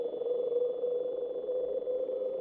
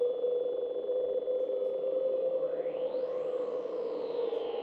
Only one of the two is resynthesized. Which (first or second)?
first